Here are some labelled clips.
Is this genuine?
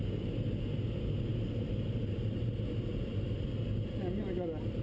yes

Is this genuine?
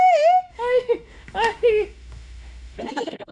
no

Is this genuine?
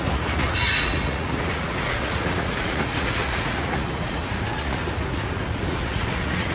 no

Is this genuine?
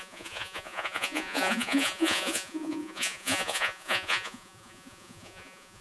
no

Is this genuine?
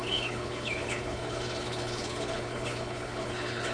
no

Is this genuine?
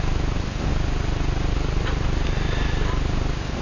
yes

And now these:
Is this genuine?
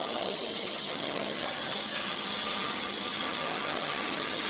no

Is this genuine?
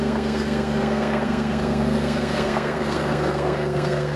no